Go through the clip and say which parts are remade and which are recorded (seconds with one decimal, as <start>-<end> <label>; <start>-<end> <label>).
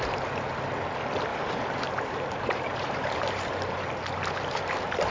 0.0-1.3 recorded; 1.3-3.9 remade; 3.9-5.1 recorded